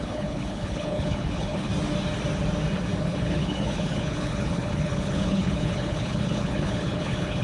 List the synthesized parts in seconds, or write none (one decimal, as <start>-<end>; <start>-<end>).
0.0-1.7; 3.0-7.4